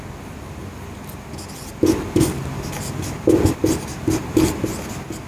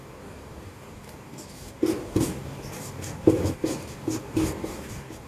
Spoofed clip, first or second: second